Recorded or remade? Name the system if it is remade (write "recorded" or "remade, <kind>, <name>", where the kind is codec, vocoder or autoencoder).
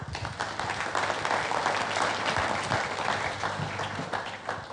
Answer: recorded